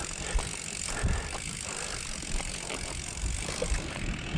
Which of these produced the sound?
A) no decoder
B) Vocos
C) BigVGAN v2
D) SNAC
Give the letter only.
A